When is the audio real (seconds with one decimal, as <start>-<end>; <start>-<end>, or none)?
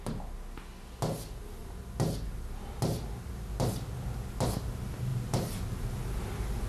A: 0.0-5.1; 5.9-6.7